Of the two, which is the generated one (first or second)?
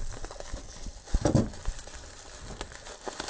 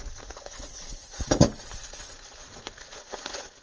second